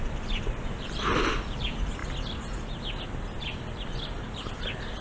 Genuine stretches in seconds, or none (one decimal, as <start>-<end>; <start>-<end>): 2.0-3.4